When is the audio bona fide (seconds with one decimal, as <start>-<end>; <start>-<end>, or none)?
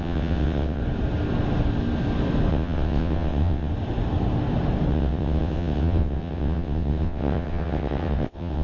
0.8-2.5; 3.7-4.9